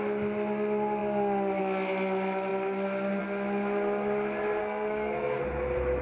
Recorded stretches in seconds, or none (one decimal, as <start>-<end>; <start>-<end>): 0.0-4.6; 5.4-6.0